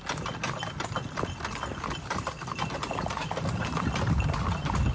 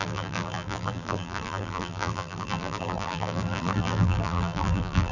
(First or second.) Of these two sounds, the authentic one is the first